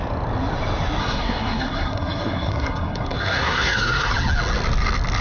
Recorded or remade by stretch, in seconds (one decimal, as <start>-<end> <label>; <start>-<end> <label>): 0.0-1.0 recorded; 1.0-4.1 remade; 4.1-5.2 recorded